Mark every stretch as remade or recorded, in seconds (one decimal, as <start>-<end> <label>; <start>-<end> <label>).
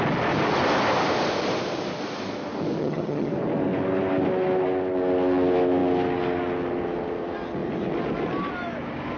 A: 0.0-2.8 recorded; 2.8-3.3 remade; 3.3-9.2 recorded